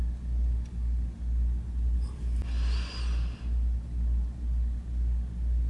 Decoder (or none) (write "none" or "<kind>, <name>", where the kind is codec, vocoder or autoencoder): none